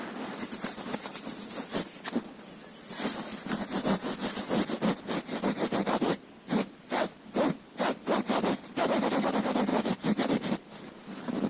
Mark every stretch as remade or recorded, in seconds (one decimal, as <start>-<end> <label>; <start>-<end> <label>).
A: 0.0-11.5 recorded